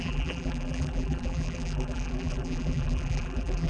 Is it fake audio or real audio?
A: fake